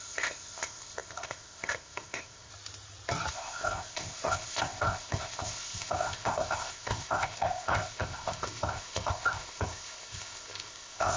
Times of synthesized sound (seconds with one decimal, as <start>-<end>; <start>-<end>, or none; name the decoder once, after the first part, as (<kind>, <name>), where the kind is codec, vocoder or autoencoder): 0.0-2.5 (codec, ZipCodec); 3.3-11.2